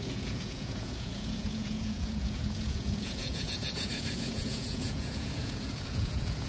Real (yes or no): no